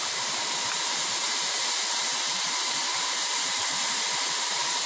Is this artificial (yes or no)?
yes